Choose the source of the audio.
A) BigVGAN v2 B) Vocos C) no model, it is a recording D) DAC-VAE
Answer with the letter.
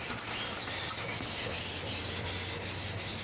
C